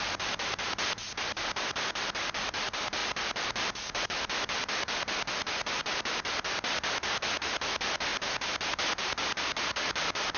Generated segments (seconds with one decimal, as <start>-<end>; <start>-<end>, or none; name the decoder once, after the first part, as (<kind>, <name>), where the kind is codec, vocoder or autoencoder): none